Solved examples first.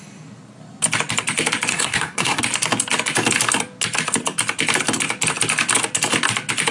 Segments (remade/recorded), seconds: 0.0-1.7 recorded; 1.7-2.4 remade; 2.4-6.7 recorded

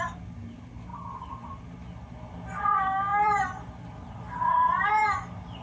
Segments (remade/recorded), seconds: 0.0-0.9 recorded; 0.9-1.6 remade; 1.6-3.1 recorded; 3.1-5.1 remade; 5.1-5.6 recorded

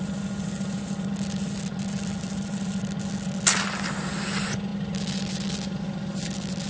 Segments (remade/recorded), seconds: 0.0-6.7 recorded

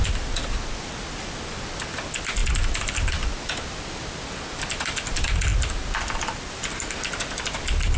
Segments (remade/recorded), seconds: 0.0-8.0 recorded

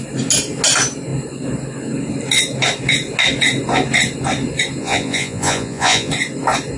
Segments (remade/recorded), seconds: 0.0-4.8 recorded; 4.8-6.1 remade; 6.1-6.8 recorded